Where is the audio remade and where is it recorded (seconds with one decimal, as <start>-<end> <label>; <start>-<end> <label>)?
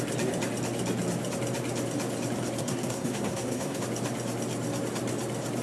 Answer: 0.0-2.6 recorded; 2.6-3.8 remade; 3.8-5.6 recorded